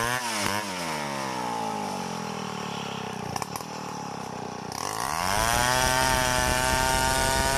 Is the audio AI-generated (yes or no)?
no